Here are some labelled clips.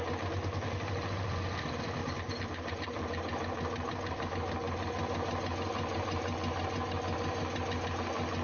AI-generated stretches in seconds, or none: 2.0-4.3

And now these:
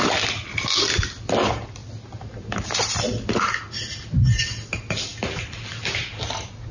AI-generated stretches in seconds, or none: none

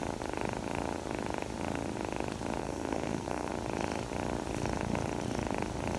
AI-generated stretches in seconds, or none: 2.6-3.5

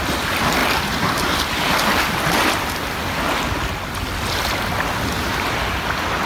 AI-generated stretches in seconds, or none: none

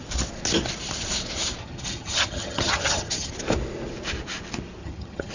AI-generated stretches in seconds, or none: 1.6-3.3; 4.8-5.3

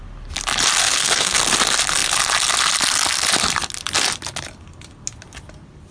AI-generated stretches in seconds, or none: 0.8-1.4

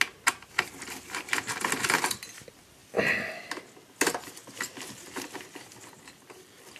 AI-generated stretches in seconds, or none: none

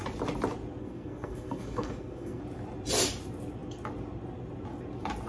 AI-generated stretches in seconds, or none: 0.8-2.4